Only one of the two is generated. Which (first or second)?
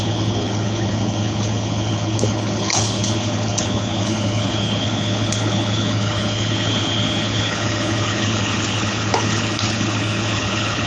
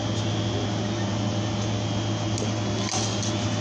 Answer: first